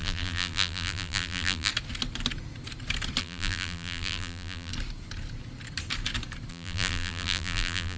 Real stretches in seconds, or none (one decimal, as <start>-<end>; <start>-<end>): 1.7-3.2; 4.7-6.5